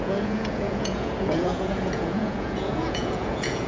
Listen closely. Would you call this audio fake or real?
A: fake